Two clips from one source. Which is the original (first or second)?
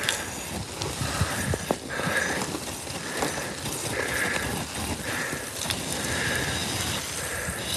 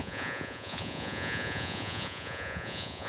first